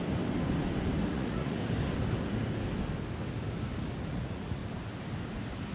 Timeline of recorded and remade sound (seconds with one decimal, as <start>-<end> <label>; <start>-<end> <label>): 0.0-1.1 recorded; 1.1-1.6 remade; 1.6-4.1 recorded; 4.1-4.6 remade; 4.6-5.7 recorded